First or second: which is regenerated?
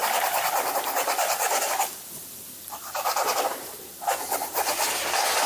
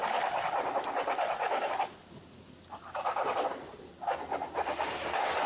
first